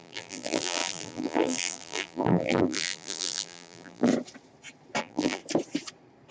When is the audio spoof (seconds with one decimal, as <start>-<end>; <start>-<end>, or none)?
0.0-4.1; 5.0-5.4

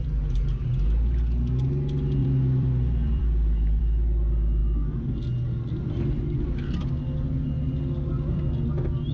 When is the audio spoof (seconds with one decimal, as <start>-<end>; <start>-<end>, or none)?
2.2-3.8